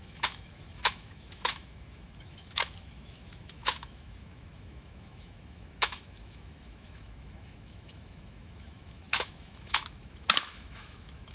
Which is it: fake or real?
fake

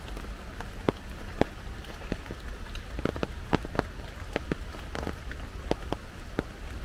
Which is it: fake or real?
real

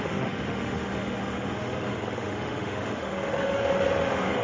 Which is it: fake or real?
fake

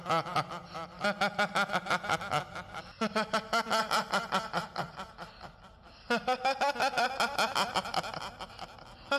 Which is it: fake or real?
real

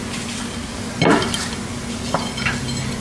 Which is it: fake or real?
real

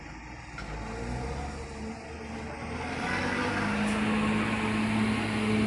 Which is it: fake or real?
real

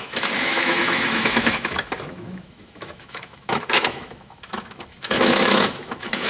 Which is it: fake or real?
fake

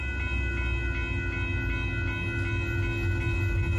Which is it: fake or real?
real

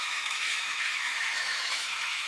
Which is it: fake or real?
fake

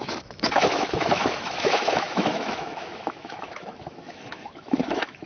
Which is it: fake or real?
fake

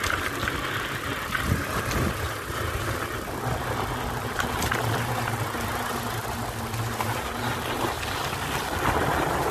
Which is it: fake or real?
real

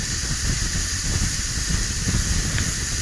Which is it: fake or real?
real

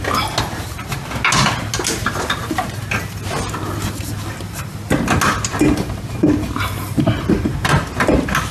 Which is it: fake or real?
real